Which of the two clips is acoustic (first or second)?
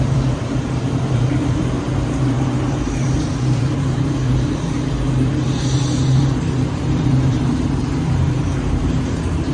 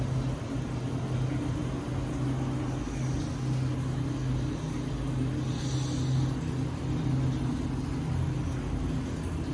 second